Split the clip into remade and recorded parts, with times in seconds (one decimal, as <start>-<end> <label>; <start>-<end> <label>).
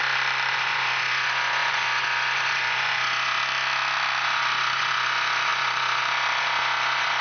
0.0-0.5 recorded; 0.5-3.4 remade; 3.4-4.2 recorded; 4.2-7.2 remade